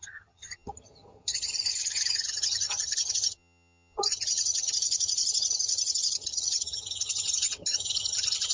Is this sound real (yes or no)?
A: no